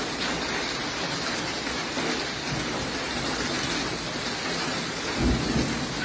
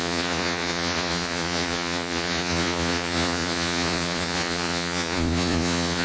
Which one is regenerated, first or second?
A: second